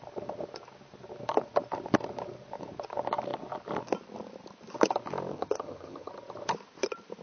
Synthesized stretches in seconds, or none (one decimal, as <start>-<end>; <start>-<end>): 5.3-6.1